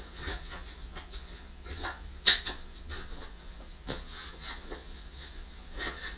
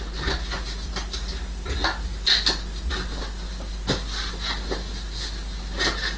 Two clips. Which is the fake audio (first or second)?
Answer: first